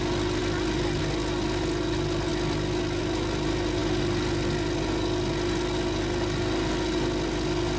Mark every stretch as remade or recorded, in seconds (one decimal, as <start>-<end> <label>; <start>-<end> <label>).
0.0-7.8 recorded